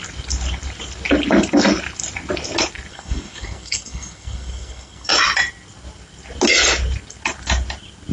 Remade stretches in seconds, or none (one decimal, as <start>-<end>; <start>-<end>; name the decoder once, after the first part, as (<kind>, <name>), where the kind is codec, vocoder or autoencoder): 2.9-5.1 (codec, SNAC)